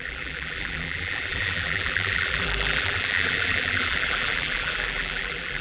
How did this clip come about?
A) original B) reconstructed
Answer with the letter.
B